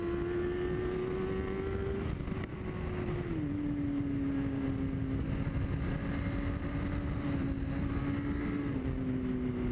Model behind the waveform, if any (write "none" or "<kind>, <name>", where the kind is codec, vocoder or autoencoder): none